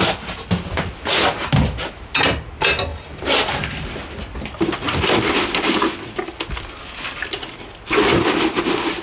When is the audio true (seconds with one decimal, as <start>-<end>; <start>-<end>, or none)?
0.0-9.0